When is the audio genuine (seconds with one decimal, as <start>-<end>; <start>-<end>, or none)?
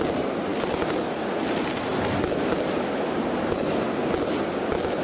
0.0-5.0